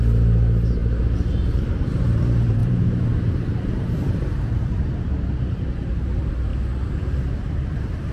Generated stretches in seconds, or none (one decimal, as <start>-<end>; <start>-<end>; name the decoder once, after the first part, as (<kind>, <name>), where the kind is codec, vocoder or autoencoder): 0.0-0.8 (vocoder, BigVGAN v2); 1.7-6.5; 7.3-8.1